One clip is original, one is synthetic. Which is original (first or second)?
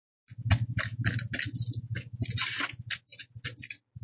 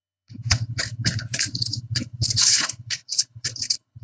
first